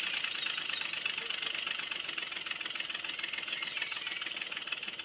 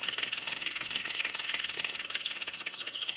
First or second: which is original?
first